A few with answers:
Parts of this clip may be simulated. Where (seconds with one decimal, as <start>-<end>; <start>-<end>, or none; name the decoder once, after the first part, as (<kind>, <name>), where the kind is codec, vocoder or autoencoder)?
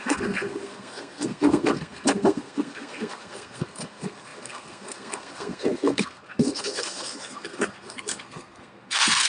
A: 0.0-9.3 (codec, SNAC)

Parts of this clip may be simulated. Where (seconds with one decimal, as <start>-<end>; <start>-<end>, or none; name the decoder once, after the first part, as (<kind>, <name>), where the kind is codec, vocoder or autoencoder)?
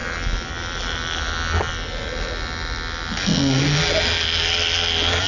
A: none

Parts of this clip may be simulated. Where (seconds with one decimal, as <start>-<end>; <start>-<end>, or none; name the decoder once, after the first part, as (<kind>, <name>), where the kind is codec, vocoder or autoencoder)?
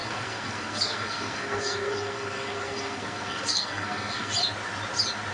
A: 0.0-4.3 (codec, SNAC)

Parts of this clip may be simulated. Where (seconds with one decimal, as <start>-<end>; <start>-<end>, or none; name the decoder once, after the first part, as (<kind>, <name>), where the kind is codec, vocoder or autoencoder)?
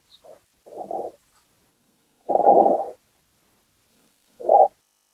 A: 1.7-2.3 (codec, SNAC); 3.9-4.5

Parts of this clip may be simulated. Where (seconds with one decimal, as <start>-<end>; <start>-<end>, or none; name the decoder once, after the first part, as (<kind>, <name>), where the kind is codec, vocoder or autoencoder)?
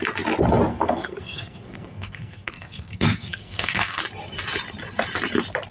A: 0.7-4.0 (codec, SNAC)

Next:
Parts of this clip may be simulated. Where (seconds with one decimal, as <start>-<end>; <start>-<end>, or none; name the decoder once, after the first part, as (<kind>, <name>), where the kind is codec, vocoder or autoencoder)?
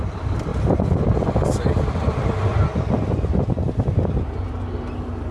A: none